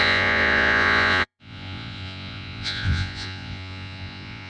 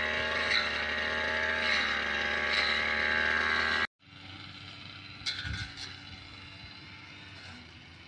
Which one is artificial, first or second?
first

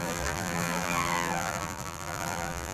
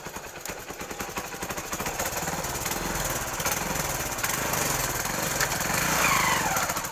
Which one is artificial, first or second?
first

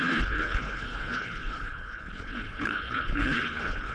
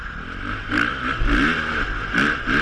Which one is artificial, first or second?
first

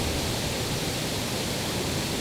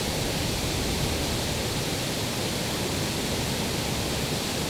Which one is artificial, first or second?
first